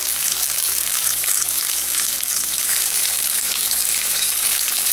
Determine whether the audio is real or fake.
fake